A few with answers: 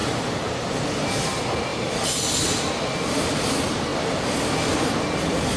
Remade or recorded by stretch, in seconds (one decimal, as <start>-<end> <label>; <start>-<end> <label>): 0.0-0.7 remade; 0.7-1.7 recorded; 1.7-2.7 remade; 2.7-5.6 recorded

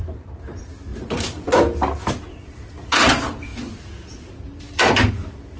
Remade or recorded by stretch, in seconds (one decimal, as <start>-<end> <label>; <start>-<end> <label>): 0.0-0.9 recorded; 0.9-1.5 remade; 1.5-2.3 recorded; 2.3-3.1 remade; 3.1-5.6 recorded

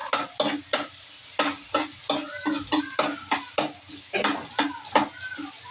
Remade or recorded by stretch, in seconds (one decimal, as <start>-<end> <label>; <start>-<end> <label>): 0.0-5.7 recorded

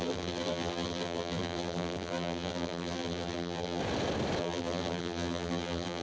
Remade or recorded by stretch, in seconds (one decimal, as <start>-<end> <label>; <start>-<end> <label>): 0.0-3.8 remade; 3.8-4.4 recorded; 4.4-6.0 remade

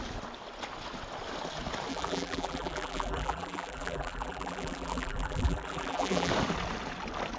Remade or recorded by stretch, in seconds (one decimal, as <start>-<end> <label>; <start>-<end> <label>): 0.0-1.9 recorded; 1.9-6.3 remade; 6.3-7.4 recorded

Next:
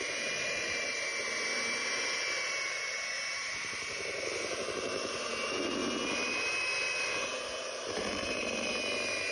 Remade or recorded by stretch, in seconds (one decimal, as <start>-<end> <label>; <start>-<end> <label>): 0.0-1.1 remade; 1.1-3.3 recorded; 3.3-5.8 remade; 5.8-7.6 recorded; 7.6-8.7 remade; 8.7-9.3 recorded

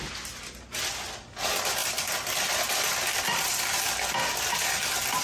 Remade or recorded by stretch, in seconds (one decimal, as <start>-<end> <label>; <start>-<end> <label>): 0.0-5.2 recorded

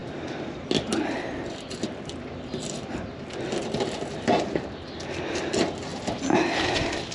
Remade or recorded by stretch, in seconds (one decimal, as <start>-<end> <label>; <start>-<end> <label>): 0.0-7.1 recorded